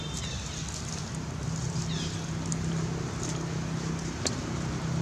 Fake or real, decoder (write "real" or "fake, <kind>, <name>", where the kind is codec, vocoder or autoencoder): real